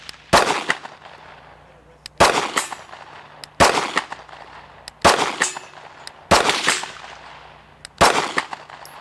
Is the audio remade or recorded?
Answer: recorded